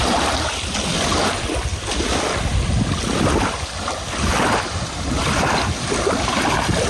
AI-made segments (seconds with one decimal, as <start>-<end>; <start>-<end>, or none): none